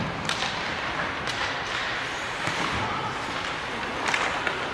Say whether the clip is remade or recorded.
recorded